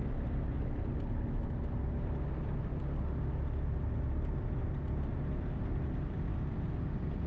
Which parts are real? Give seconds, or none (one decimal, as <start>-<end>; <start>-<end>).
0.0-7.3